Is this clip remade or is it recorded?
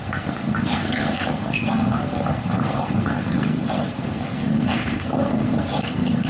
remade